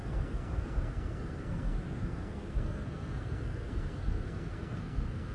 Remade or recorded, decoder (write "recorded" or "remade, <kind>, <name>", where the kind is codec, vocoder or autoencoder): remade, codec, SNAC